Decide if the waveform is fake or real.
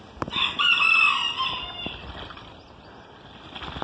real